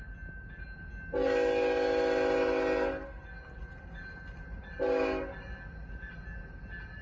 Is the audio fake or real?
real